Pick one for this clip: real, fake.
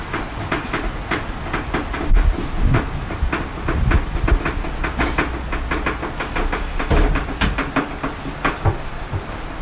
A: real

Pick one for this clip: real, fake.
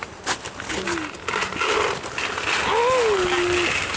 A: real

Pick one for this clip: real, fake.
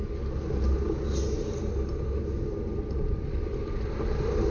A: real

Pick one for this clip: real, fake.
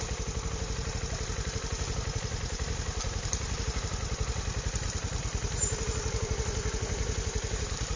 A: real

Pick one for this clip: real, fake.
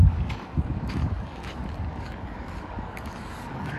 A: fake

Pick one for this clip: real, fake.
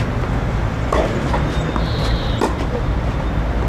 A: real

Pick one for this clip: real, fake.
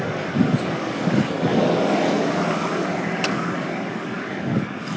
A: fake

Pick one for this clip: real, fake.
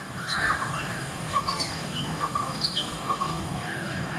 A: fake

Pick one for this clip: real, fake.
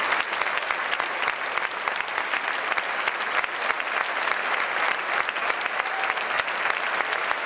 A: real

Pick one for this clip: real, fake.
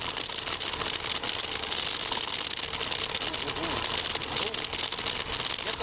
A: real